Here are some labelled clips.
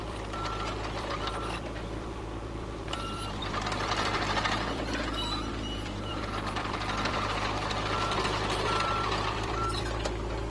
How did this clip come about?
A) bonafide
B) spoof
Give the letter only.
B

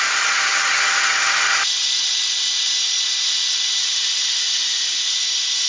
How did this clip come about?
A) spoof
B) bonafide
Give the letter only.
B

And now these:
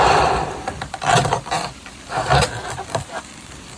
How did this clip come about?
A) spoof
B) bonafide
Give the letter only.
A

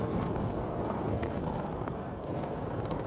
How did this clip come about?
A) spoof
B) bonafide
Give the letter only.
A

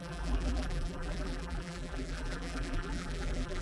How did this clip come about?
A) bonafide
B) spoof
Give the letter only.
B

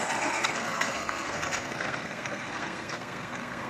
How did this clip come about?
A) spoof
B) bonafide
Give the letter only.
A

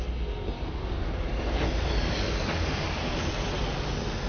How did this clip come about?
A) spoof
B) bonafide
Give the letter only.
B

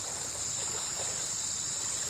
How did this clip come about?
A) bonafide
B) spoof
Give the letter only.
A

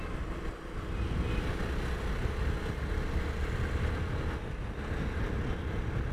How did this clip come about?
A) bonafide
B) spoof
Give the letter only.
A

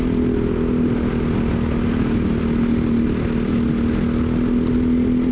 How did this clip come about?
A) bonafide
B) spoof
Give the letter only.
A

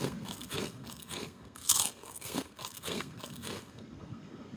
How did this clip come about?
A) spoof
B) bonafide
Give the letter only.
A